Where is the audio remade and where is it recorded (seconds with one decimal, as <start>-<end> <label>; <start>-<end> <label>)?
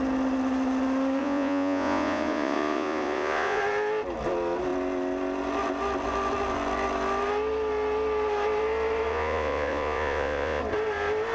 0.0-1.2 recorded; 1.2-3.6 remade; 3.6-9.1 recorded; 9.1-10.6 remade; 10.6-11.3 recorded